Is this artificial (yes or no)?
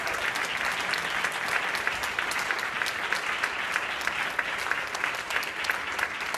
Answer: no